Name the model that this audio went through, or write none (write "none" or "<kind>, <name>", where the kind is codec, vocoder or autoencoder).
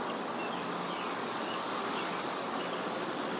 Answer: none